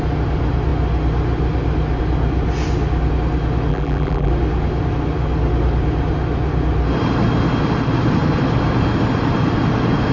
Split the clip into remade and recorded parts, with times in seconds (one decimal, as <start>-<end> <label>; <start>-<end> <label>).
0.0-3.7 recorded; 3.7-4.3 remade; 4.3-10.1 recorded